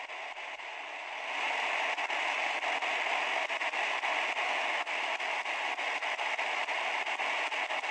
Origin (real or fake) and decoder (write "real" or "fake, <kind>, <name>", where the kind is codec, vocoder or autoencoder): real